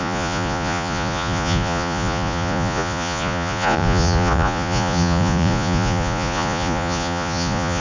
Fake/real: fake